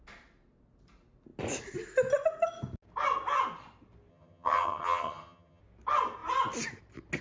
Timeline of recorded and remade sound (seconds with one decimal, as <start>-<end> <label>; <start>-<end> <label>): 0.0-4.1 recorded; 4.1-5.6 remade; 5.6-7.2 recorded

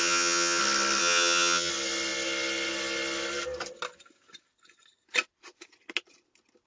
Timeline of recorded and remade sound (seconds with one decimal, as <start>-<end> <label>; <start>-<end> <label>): 0.0-0.6 remade; 0.6-1.0 recorded; 1.0-1.7 remade; 1.7-6.7 recorded

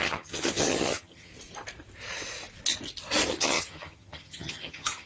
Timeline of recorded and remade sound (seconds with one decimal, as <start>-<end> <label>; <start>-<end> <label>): 0.0-1.3 remade; 1.3-3.3 recorded; 3.3-5.1 remade

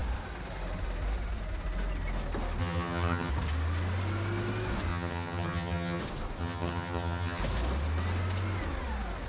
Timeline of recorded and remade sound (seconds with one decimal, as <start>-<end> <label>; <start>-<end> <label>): 0.0-2.6 recorded; 2.6-3.3 remade; 3.3-4.9 recorded; 4.9-6.0 remade; 6.0-6.4 recorded; 6.4-7.4 remade; 7.4-9.3 recorded

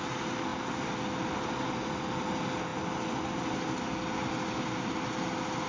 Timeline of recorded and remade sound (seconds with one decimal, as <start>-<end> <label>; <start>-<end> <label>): 0.0-5.7 recorded

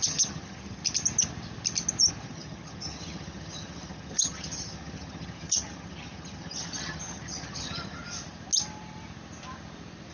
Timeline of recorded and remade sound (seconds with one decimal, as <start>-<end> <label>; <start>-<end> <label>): 0.0-0.8 remade; 0.8-2.1 recorded; 2.1-8.0 remade; 8.0-10.1 recorded

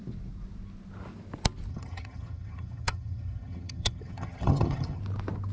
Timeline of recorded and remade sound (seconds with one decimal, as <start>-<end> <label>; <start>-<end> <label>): 0.0-1.7 recorded; 1.7-5.0 remade; 5.0-5.5 recorded

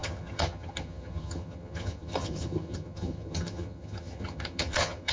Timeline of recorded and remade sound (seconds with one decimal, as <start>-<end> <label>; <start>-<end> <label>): 0.0-5.1 remade